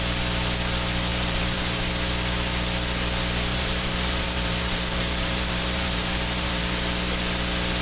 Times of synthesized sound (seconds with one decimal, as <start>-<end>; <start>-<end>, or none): 1.1-1.9; 3.5-6.6